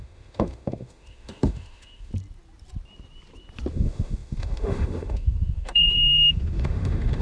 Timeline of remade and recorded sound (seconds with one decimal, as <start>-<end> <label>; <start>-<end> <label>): 0.0-2.1 remade; 2.1-3.7 recorded; 3.7-7.2 remade